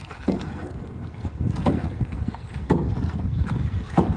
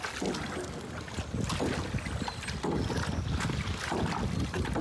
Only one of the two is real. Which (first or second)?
second